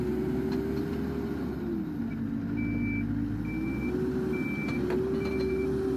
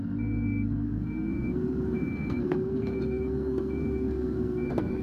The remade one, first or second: second